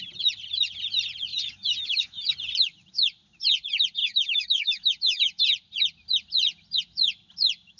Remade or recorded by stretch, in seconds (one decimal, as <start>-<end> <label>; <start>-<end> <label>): 0.0-1.3 recorded; 1.3-2.3 remade; 2.3-4.0 recorded; 4.0-5.4 remade; 5.4-7.8 recorded

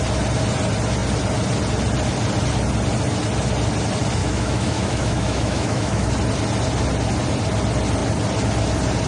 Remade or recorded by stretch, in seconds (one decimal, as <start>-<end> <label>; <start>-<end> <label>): 0.0-4.2 recorded; 4.2-6.1 remade; 6.1-9.1 recorded

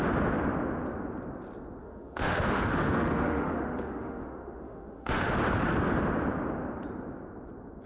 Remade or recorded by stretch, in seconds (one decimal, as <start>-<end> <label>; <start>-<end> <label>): 0.0-1.8 recorded; 1.8-5.3 remade; 5.3-7.9 recorded

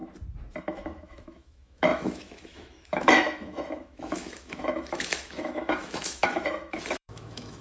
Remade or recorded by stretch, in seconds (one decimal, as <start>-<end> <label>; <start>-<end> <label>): 0.0-0.6 recorded; 0.6-7.6 remade